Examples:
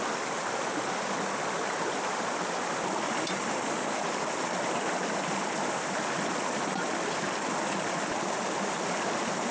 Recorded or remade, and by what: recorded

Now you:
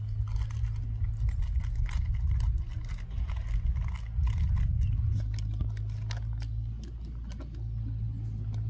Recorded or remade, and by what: recorded